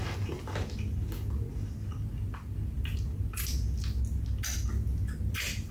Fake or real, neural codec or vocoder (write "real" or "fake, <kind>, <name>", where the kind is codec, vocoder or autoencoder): real